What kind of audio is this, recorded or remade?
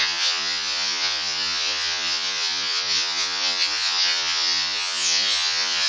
remade